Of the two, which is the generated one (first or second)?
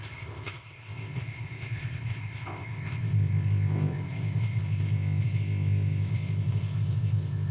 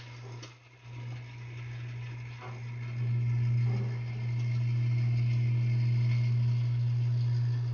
first